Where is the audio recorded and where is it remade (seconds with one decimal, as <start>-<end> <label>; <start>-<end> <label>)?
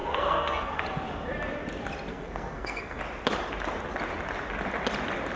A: 0.0-0.8 remade; 0.8-2.1 recorded; 2.1-3.0 remade; 3.0-5.4 recorded